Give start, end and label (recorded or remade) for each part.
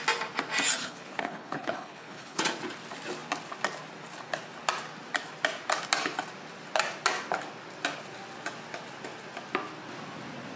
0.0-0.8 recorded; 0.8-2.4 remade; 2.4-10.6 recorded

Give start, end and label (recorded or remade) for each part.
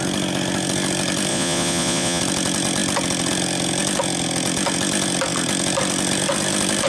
0.0-1.3 recorded; 1.3-2.2 remade; 2.2-6.9 recorded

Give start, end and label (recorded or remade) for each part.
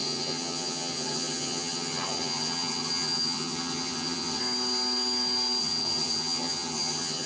0.0-4.4 remade; 4.4-5.6 recorded; 5.6-7.3 remade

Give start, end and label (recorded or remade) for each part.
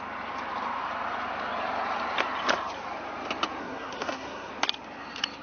0.0-3.6 recorded; 3.6-4.5 remade; 4.5-5.4 recorded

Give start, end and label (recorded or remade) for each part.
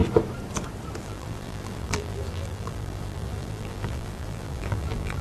0.0-1.0 recorded; 1.0-5.2 remade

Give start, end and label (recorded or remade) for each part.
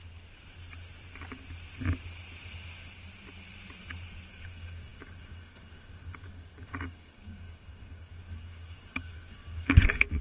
0.0-4.3 recorded; 4.3-10.2 remade